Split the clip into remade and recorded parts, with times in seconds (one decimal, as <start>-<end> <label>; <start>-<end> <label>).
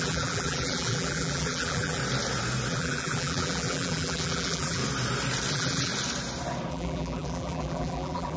0.0-2.0 remade; 2.0-2.7 recorded; 2.7-4.8 remade; 4.8-5.5 recorded; 5.5-5.9 remade; 5.9-6.7 recorded; 6.7-8.4 remade